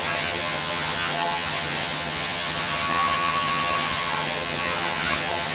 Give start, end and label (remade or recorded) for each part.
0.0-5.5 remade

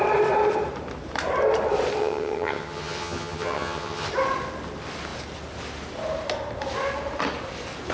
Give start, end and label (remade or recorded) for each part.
0.0-2.0 recorded; 2.0-4.1 remade; 4.1-7.9 recorded